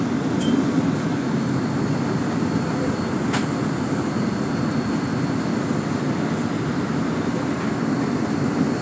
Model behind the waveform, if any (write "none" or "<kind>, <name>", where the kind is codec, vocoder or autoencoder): none